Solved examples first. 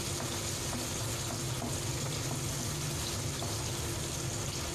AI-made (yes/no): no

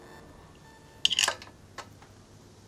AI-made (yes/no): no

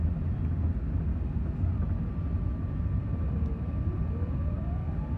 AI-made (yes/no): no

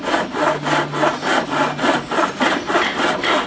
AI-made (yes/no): no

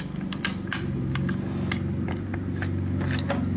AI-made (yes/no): no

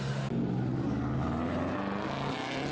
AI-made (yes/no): no